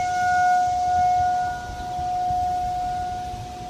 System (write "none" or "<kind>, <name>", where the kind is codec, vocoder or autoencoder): none